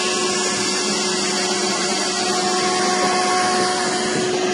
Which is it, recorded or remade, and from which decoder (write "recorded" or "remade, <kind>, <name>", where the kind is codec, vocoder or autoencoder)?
recorded